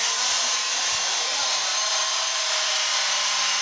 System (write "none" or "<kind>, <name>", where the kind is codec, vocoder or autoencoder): vocoder, BigVGAN v2